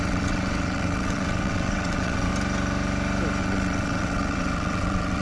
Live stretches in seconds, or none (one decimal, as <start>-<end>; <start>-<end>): 2.3-3.4